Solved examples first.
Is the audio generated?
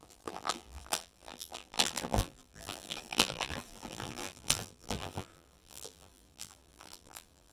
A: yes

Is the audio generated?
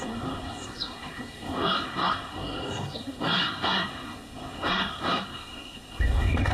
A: yes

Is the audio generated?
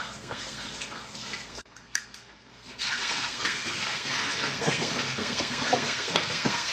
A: yes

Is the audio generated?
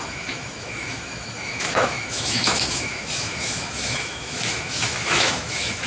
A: yes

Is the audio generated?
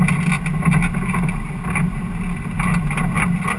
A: no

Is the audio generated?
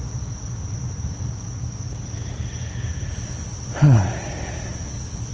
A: no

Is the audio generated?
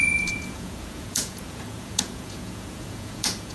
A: yes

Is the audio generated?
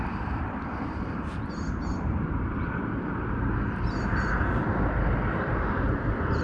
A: no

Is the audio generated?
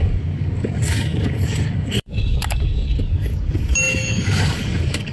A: yes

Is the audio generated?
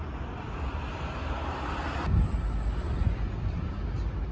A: no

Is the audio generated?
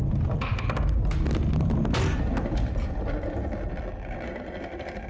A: no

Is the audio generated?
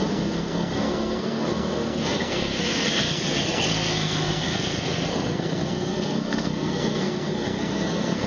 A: yes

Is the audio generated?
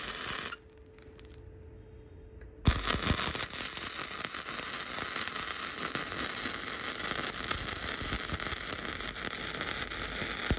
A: no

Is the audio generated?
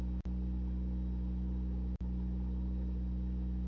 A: no